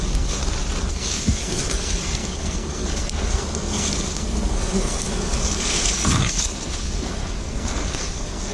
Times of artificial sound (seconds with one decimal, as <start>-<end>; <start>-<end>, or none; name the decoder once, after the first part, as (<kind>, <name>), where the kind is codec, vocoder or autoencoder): 0.0-0.4 (codec, SNAC); 0.9-8.5